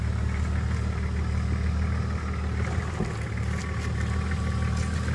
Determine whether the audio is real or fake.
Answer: real